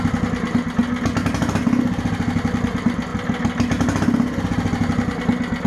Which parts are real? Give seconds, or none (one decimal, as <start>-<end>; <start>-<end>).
0.0-5.7